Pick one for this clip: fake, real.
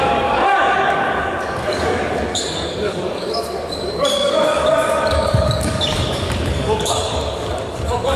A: fake